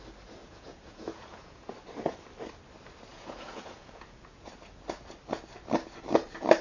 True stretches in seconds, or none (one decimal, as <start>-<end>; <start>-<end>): 0.0-0.4; 1.7-3.1; 4.5-6.6